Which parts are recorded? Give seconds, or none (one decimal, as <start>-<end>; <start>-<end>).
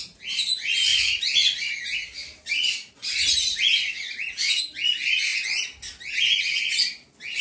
0.0-7.4